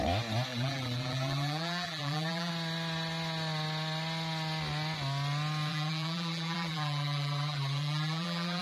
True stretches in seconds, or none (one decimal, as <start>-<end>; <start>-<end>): 0.0-0.5; 2.5-5.7